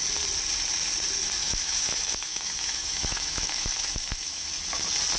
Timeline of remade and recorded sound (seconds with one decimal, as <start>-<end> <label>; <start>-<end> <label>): 0.0-1.4 recorded; 1.4-4.5 remade; 4.5-5.2 recorded